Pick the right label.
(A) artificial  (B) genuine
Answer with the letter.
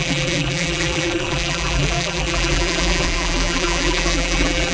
A